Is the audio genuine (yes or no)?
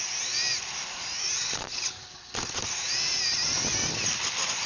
yes